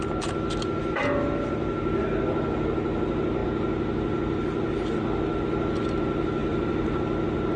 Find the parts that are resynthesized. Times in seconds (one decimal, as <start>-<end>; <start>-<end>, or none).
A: 6.4-7.0